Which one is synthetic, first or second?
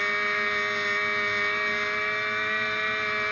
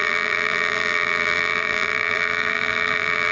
second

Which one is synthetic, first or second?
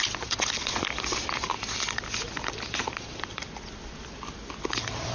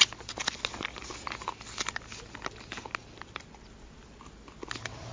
first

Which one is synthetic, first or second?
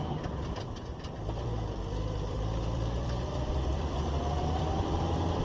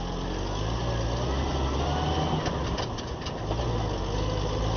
first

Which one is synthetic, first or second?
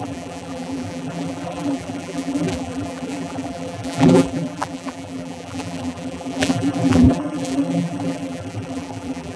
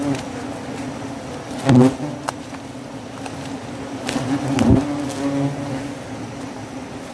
first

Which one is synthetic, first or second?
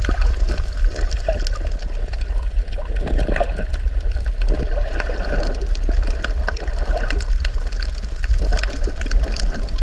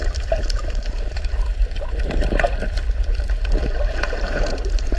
second